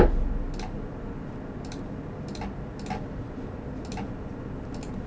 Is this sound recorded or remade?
recorded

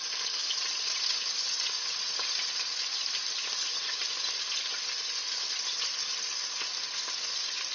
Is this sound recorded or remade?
recorded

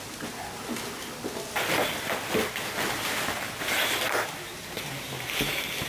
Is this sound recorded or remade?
recorded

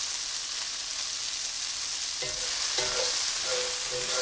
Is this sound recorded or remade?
recorded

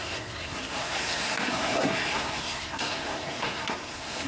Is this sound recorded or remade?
remade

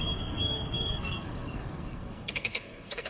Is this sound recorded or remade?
remade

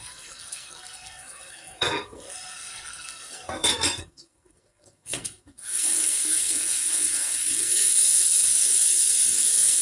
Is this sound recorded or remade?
remade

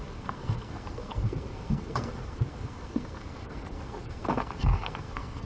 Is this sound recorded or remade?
remade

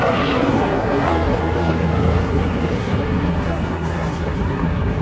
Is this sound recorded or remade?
remade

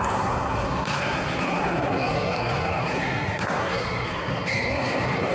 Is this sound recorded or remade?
remade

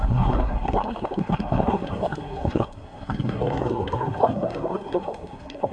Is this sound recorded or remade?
remade